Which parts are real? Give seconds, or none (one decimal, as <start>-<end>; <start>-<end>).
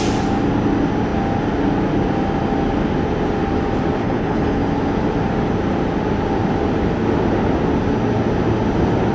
0.0-4.0; 4.6-9.1